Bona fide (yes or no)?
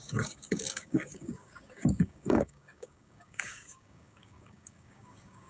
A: no